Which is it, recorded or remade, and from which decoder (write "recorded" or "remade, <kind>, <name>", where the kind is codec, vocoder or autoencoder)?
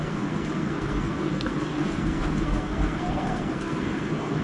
remade, codec, SNAC